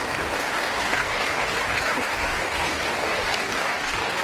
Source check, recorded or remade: remade